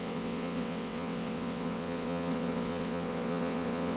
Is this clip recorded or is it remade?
remade